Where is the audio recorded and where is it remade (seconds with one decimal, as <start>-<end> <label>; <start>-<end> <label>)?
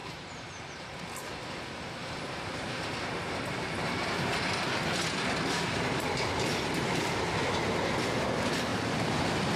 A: 0.0-1.1 remade; 1.1-2.0 recorded; 2.0-4.0 remade; 4.0-8.7 recorded; 8.7-9.6 remade